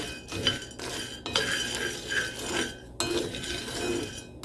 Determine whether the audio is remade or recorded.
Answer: recorded